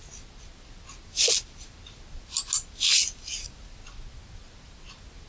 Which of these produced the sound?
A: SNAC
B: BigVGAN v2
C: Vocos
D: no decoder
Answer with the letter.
D